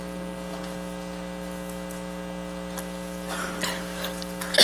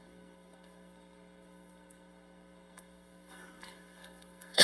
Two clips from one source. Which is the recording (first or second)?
first